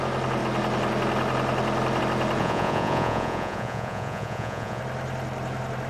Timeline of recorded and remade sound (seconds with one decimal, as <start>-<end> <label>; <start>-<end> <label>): 0.0-2.4 recorded; 2.4-4.8 remade; 4.8-5.9 recorded